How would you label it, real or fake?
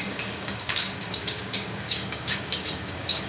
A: fake